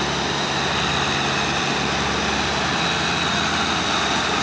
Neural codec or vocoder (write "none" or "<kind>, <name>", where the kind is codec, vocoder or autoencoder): none